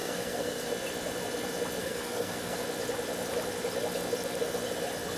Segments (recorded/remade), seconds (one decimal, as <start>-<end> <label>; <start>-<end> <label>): 0.0-0.7 remade; 0.7-1.8 recorded; 1.8-2.6 remade; 2.6-5.2 recorded